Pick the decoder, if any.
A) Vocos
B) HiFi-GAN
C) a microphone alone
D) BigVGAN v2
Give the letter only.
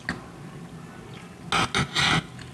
C